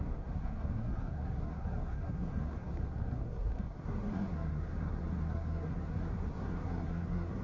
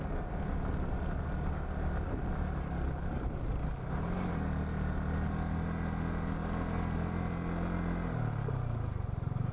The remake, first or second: first